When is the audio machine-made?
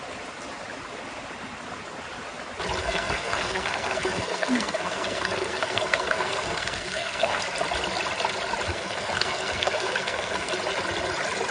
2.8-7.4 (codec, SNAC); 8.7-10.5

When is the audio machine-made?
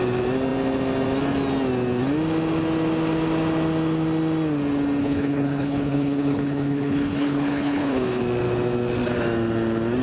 5.0-8.2 (codec, HILCodec)